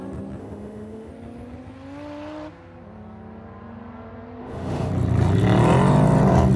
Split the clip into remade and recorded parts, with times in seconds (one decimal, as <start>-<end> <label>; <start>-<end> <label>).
0.0-0.4 recorded; 0.4-1.1 remade; 1.1-4.4 recorded; 4.4-4.9 remade; 4.9-6.6 recorded